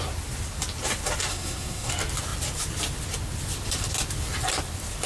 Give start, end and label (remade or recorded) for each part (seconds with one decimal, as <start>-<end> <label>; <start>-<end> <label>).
0.0-1.3 recorded; 1.3-1.9 remade; 1.9-5.1 recorded